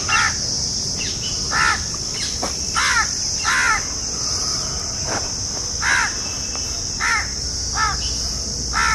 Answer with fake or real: real